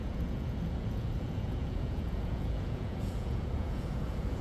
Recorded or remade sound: remade